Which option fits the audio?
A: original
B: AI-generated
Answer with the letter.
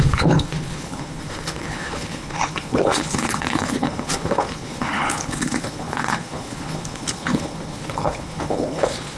B